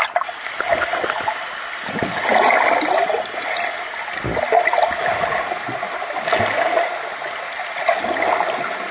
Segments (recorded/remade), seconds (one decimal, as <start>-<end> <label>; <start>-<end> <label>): 0.0-8.9 recorded